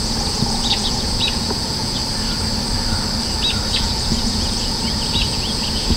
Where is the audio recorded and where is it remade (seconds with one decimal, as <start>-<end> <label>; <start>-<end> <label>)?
0.0-2.0 remade; 2.0-3.7 recorded; 3.7-6.0 remade